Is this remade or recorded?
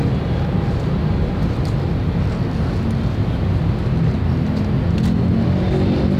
recorded